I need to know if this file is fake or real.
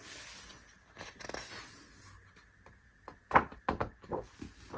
real